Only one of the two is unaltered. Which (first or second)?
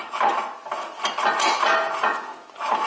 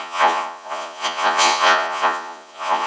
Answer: first